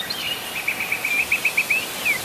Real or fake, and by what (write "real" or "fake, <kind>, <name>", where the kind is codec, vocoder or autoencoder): real